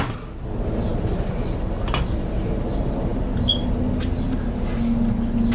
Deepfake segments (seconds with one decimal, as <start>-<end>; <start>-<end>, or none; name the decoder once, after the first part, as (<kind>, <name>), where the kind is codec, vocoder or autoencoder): none